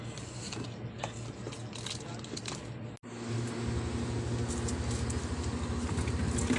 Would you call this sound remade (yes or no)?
no